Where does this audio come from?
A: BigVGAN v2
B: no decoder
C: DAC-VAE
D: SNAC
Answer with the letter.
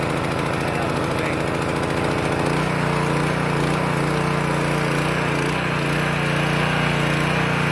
B